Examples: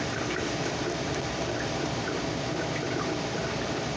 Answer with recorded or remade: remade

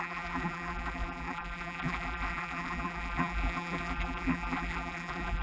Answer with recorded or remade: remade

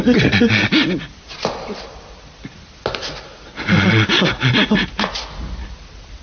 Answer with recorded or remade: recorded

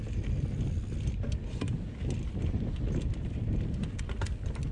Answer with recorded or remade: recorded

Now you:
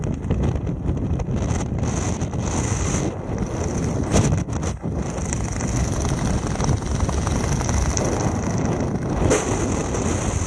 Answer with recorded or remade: recorded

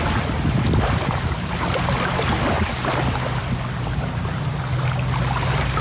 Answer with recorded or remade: recorded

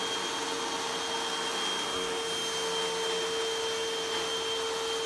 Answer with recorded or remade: recorded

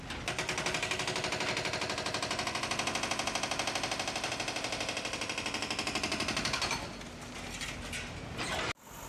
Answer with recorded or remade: recorded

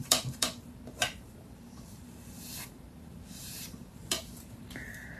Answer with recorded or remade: remade